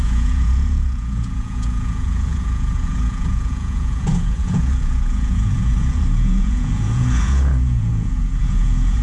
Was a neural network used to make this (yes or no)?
yes